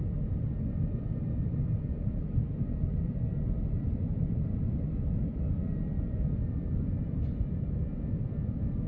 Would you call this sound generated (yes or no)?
no